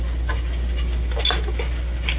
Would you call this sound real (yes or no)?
yes